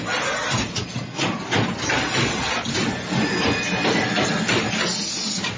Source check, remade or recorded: recorded